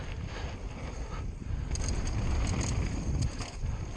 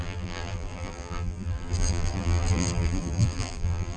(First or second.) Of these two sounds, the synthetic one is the second